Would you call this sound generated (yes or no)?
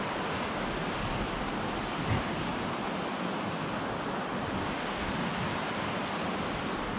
no